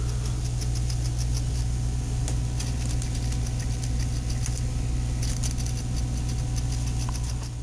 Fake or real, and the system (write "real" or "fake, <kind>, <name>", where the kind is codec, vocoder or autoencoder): real